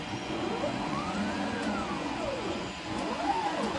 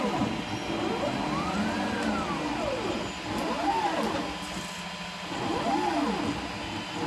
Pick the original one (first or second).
second